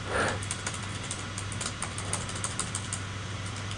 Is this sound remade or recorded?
remade